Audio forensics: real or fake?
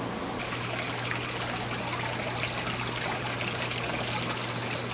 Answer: real